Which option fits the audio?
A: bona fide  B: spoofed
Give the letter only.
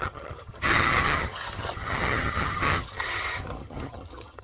B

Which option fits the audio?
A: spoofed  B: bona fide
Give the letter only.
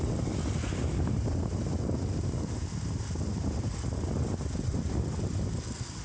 B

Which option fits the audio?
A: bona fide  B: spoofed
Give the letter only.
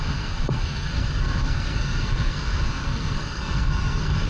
B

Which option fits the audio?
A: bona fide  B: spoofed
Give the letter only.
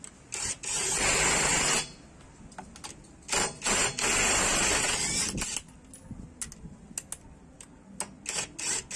A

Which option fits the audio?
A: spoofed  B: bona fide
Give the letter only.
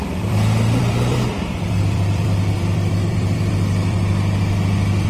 A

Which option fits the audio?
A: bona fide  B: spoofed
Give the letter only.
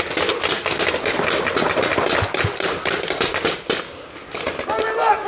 A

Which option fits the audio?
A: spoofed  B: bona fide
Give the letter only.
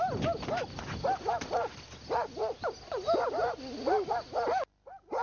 B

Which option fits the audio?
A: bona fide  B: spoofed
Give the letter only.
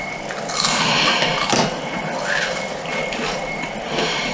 A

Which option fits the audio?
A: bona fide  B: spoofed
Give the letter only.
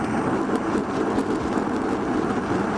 A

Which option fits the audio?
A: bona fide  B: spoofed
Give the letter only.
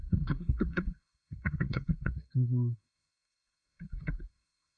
B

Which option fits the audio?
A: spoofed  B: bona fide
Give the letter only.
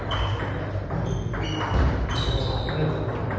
B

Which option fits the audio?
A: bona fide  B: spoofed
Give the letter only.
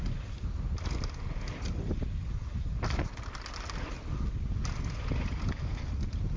A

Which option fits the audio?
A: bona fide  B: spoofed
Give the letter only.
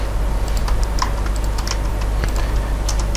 A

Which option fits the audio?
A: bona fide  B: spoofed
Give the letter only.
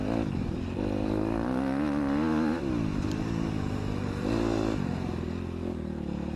A